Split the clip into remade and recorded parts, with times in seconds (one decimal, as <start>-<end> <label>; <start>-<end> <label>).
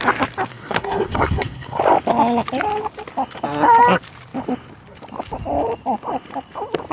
0.0-0.5 recorded; 0.5-1.8 remade; 1.8-6.9 recorded